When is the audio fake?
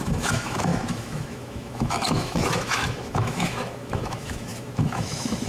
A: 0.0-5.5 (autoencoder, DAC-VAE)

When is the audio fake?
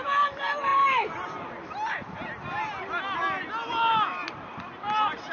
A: none